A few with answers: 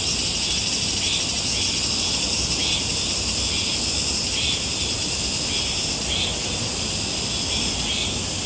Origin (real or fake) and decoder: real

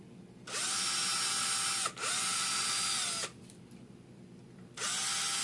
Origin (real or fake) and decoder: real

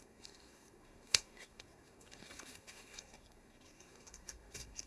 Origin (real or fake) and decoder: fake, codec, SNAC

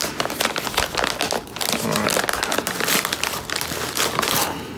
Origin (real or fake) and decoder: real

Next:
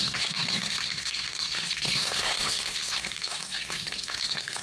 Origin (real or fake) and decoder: fake, codec, SNAC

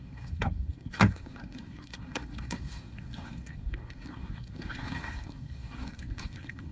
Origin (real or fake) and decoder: fake, codec, SNAC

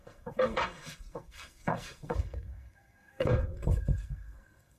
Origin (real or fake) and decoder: fake, codec, SNAC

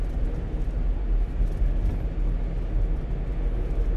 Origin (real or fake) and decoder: real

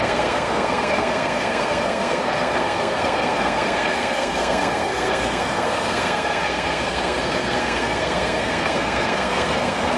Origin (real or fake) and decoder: fake, codec, SNAC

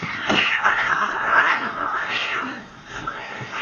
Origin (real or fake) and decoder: fake, codec, SNAC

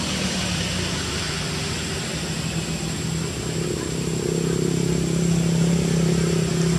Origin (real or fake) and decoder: real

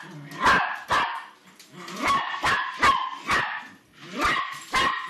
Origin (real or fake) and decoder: real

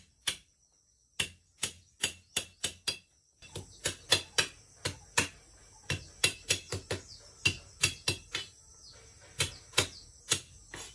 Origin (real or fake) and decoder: real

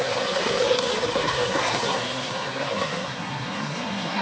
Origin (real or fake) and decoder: fake, codec, SNAC